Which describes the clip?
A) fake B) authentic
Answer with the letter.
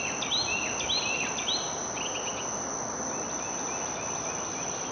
B